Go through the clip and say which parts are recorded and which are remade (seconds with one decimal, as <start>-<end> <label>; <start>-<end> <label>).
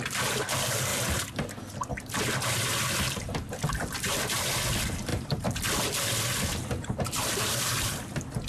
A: 0.0-8.5 remade